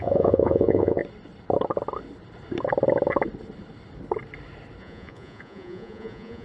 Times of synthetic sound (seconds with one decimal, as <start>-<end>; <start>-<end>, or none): 0.0-1.0; 4.8-6.4